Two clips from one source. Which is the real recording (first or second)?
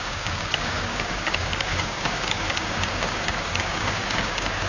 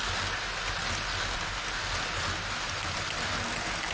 second